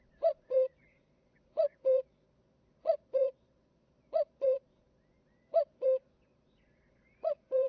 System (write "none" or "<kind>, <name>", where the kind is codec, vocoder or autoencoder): vocoder, Vocos